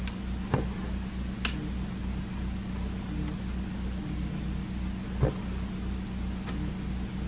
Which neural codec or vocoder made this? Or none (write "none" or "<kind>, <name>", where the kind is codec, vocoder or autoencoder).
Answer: none